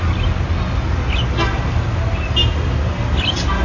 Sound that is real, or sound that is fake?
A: real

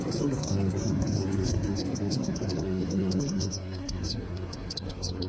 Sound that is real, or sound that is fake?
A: fake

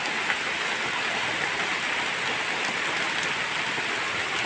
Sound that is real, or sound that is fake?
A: real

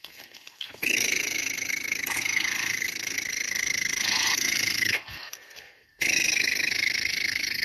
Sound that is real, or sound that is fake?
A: fake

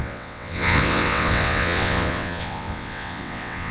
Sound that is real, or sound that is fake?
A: fake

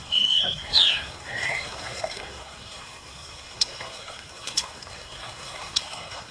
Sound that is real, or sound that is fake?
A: fake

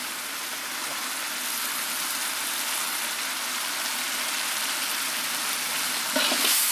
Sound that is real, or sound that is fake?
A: real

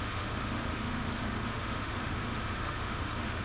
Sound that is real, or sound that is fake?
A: fake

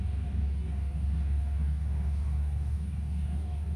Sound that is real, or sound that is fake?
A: fake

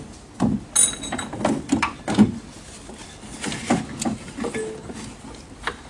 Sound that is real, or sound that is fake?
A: real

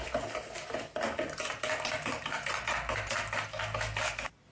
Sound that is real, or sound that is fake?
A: real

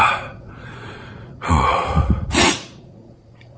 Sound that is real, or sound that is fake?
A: fake